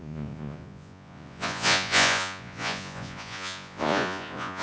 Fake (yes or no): yes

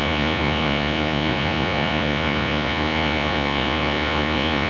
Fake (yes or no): yes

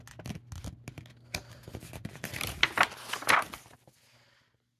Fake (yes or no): no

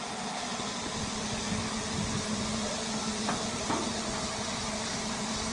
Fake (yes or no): no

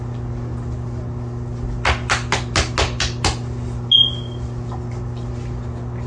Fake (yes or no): no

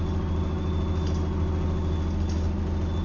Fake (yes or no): no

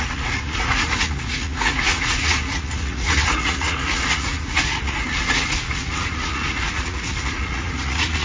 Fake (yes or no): yes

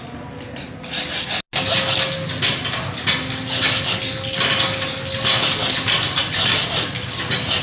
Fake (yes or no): no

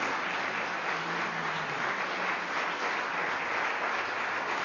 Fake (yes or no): no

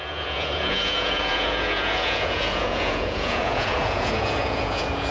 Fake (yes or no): yes